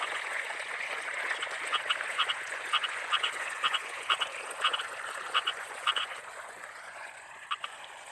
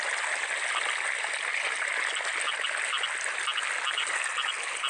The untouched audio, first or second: second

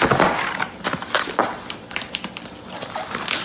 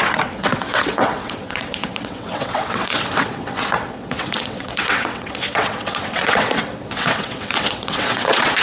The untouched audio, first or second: first